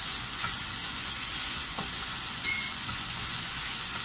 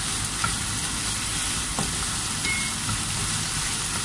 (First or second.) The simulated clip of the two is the first